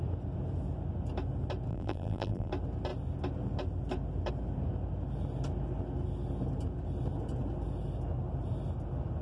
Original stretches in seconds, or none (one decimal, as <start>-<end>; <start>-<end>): 0.0-1.7; 2.5-9.2